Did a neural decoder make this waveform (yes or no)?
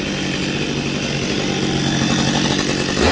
no